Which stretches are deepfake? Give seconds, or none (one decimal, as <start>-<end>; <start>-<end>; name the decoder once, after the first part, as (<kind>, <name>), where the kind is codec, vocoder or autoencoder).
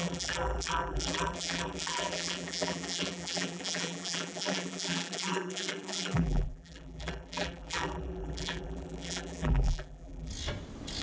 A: 0.0-10.3 (vocoder, BigVGAN v2)